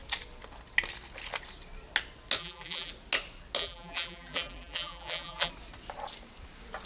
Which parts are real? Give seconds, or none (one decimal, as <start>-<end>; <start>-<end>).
0.0-2.4; 2.9-3.6; 5.5-6.9